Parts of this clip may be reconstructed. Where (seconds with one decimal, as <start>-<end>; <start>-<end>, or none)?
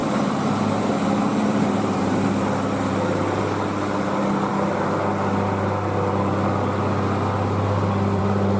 0.0-0.6; 1.3-3.4